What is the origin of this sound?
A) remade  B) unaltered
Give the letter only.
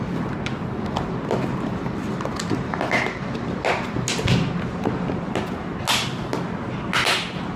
B